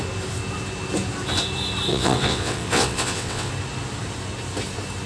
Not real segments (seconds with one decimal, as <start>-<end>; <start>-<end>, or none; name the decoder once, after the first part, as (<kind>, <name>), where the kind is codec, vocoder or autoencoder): 1.9-3.5 (vocoder, WaveNeXt)